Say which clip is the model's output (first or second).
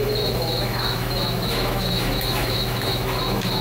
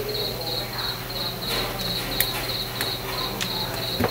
first